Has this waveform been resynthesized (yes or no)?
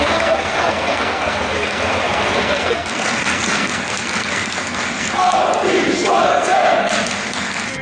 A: yes